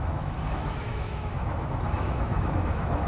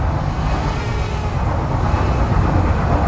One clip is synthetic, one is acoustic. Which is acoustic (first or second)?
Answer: second